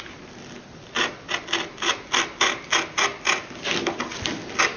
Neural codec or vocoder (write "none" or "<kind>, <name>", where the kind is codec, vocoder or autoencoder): none